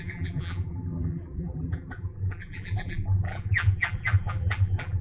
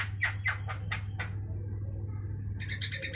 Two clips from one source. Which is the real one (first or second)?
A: second